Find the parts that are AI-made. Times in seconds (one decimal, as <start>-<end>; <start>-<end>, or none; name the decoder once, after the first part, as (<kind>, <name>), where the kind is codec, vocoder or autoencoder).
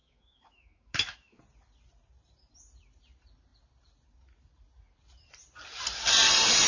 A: 0.0-1.4 (autoencoder, DAC-VAE)